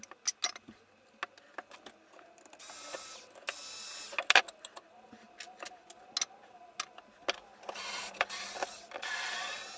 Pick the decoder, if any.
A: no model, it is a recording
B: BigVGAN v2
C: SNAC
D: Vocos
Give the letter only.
A